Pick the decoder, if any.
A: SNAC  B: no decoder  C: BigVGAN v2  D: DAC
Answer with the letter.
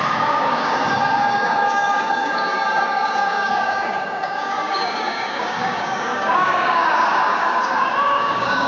D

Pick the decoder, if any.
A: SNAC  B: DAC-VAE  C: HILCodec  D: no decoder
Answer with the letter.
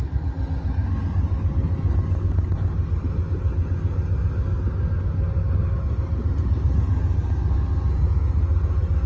D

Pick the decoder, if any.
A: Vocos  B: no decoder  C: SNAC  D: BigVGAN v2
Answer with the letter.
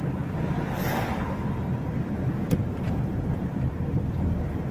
B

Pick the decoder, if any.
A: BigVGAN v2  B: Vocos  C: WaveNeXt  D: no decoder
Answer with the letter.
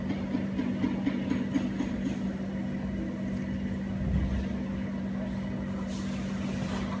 D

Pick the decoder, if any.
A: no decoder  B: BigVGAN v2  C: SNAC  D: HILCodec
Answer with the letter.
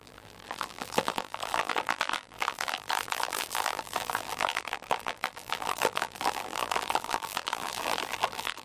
B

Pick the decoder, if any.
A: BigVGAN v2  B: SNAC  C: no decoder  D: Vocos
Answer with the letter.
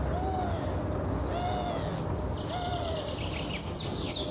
C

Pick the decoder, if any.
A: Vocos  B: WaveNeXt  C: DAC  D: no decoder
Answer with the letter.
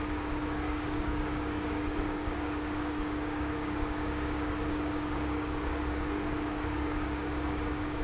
C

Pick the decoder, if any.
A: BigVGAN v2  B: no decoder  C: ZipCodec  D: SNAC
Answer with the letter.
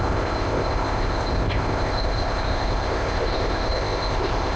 C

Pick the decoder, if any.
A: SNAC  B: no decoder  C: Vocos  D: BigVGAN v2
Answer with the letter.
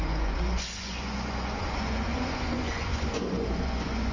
C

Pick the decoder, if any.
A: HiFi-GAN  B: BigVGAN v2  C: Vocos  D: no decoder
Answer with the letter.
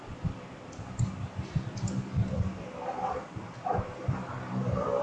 B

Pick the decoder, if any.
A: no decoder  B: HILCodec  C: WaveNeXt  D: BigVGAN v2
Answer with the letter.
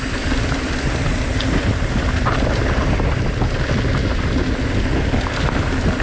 A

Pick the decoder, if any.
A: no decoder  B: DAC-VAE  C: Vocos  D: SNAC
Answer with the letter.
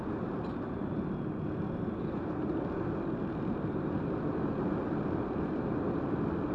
A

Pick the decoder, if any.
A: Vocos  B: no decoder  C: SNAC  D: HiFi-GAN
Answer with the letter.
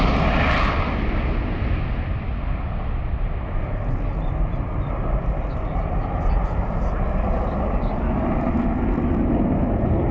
B